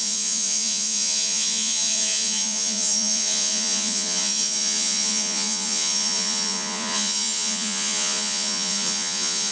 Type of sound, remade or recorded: remade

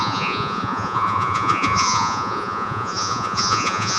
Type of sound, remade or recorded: remade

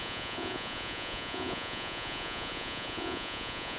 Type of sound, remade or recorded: remade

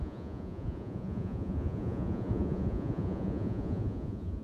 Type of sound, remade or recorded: remade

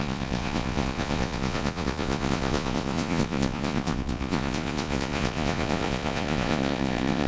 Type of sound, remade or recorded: remade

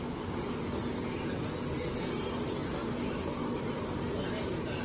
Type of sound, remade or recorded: recorded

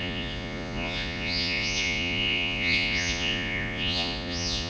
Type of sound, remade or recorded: remade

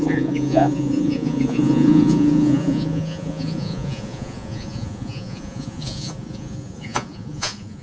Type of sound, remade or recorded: remade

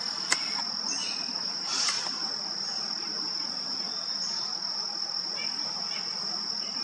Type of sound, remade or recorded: recorded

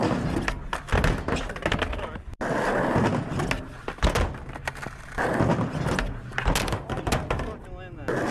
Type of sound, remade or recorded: recorded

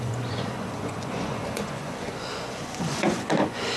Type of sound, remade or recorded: remade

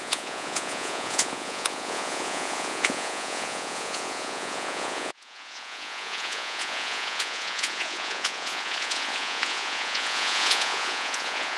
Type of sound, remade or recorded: remade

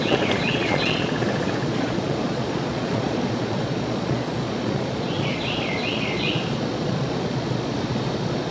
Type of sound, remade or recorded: remade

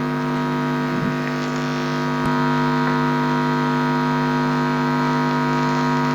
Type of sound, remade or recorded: recorded